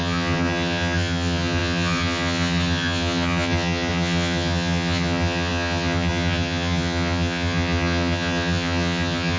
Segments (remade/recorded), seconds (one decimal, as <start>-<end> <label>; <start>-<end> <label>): 0.0-9.4 remade